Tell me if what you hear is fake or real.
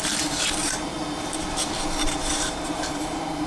fake